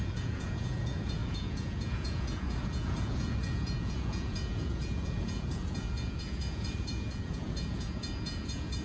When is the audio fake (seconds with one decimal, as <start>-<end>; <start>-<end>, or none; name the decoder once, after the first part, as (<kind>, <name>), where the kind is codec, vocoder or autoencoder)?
0.0-8.8 (vocoder, Vocos)